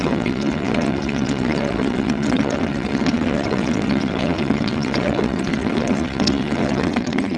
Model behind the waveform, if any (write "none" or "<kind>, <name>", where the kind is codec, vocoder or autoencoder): vocoder, WaveNeXt